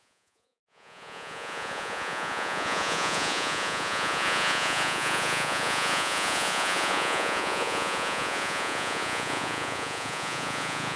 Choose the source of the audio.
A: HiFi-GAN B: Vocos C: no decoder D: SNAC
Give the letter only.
B